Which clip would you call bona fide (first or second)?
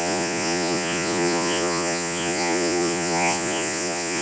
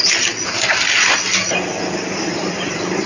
second